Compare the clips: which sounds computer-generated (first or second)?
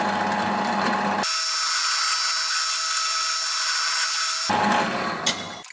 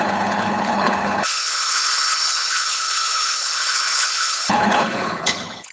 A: second